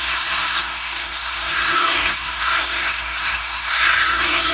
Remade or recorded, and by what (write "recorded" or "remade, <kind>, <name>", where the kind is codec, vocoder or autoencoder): remade, codec, SNAC